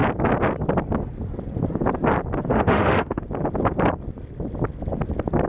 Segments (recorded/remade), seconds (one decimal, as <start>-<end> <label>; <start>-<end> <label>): 0.0-2.5 recorded; 2.5-3.2 remade; 3.2-5.5 recorded